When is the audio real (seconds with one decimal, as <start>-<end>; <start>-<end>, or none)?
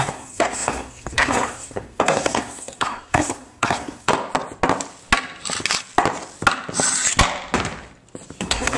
4.1-8.4